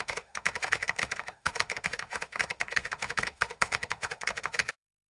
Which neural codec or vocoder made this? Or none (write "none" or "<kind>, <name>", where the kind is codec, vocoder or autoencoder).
autoencoder, DAC-VAE